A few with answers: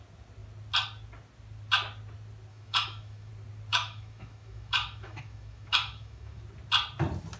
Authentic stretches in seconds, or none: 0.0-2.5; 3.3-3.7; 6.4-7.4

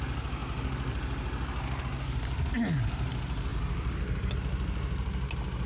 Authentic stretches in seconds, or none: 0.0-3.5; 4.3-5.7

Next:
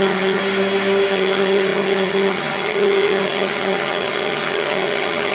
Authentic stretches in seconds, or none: 0.4-1.1